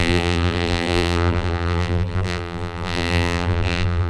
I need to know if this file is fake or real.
fake